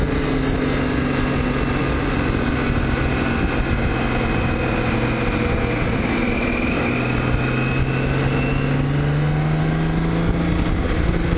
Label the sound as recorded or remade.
recorded